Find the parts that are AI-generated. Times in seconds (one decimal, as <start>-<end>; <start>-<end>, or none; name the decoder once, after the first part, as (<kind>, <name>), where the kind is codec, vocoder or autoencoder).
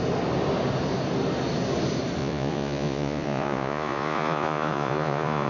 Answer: 2.2-5.5 (vocoder, Vocos)